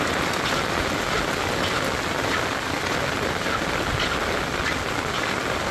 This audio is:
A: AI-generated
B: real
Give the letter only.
B